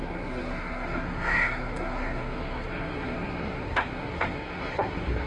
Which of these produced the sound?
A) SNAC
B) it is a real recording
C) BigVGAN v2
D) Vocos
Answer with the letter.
A